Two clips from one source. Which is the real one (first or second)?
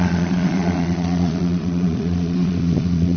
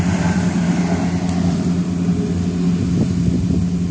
second